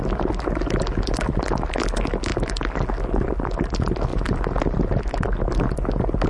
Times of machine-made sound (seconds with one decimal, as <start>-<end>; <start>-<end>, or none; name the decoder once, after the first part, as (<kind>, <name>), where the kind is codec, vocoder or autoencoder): none